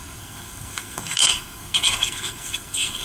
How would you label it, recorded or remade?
remade